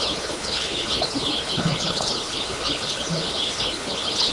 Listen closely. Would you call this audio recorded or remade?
remade